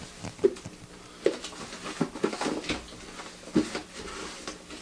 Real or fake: real